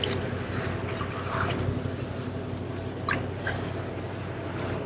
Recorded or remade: recorded